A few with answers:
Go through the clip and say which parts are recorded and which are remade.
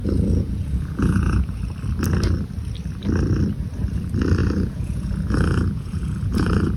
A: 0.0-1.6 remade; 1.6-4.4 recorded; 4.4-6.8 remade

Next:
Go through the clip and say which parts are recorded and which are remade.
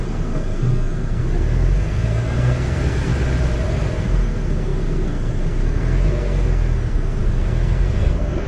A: 0.0-3.1 remade; 3.1-3.7 recorded; 3.7-8.5 remade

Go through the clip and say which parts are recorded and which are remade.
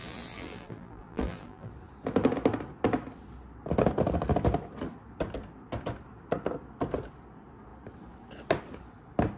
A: 0.0-1.7 remade; 1.7-9.4 recorded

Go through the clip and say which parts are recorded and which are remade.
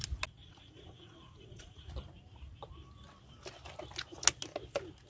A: 0.0-0.4 recorded; 0.4-1.9 remade; 1.9-5.1 recorded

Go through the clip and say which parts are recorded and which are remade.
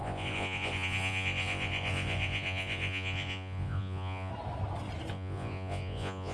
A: 0.0-4.3 remade; 4.3-5.1 recorded; 5.1-6.3 remade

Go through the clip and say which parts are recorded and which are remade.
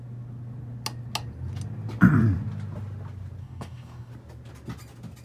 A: 0.0-3.4 recorded; 3.4-4.1 remade; 4.1-5.2 recorded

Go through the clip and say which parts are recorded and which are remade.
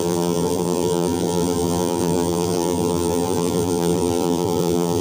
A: 0.0-5.0 remade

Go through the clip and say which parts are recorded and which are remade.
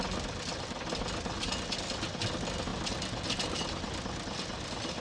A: 0.0-5.0 recorded